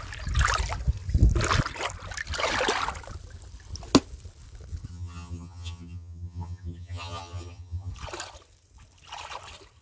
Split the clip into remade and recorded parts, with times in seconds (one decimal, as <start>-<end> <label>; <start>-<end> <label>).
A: 0.0-4.9 recorded; 4.9-7.9 remade; 7.9-9.8 recorded